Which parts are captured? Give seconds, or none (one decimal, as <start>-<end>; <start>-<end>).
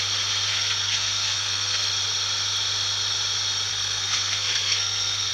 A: 0.0-0.5; 1.9-3.7